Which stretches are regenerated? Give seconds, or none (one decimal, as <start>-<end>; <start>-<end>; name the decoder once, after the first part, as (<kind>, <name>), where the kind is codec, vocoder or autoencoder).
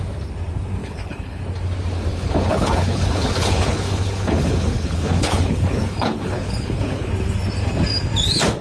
0.8-1.4 (codec, HILCodec); 2.1-7.1